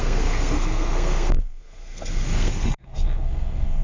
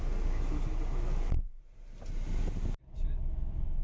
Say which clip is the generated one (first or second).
first